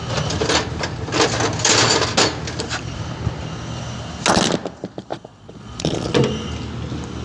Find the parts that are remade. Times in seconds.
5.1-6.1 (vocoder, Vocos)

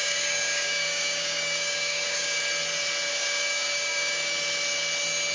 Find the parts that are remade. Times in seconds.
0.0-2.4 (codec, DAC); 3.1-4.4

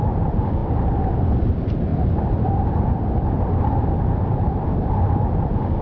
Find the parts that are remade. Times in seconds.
0.0-0.6 (vocoder, BigVGAN v2); 1.2-1.9; 4.9-5.8

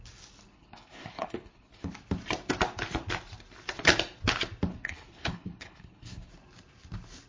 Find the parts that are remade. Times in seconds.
0.5-1.9 (codec, HILCodec); 4.7-6.3